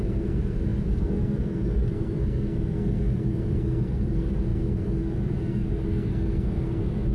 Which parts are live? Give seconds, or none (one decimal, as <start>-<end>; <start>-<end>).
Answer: none